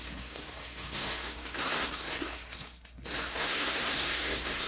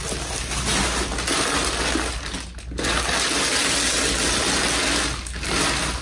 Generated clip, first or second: first